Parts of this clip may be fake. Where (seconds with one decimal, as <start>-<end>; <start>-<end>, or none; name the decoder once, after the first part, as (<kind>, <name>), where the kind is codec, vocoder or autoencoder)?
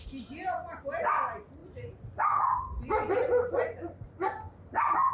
none